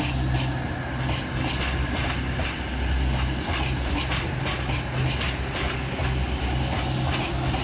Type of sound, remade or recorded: recorded